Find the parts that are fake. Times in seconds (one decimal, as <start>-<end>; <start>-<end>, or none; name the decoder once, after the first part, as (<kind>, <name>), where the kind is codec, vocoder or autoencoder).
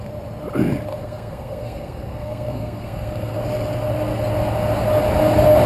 0.9-3.4 (codec, SNAC)